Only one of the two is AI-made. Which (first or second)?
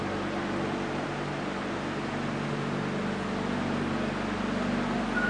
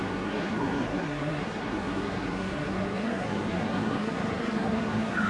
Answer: second